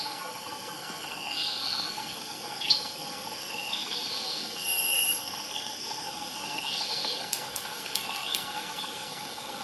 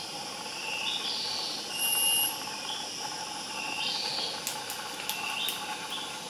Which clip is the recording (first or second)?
second